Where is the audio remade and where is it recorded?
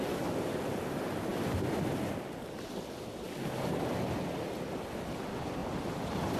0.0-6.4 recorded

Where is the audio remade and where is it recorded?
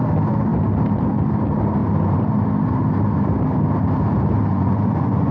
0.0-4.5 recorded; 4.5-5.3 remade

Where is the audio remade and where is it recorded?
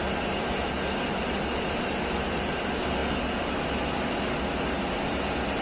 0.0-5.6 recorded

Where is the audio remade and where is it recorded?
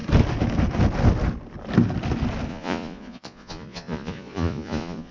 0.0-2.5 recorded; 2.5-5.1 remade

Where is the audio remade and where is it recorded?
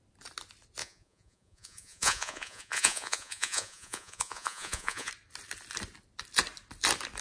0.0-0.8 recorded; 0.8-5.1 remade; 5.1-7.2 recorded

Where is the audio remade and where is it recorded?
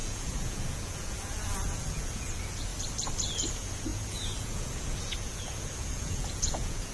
0.0-2.7 remade; 2.7-3.5 recorded; 3.5-6.9 remade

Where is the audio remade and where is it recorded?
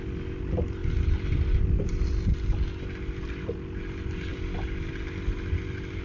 0.0-6.0 recorded